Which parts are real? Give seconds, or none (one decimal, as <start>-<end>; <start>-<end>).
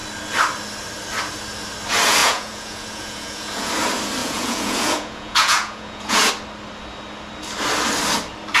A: 0.0-2.2; 3.7-4.2; 6.3-8.6